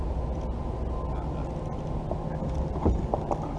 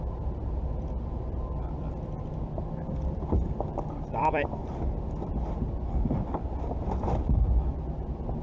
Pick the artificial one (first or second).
second